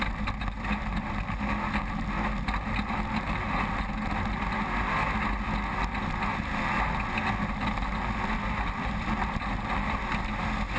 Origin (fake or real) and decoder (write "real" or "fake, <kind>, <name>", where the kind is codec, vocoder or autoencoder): real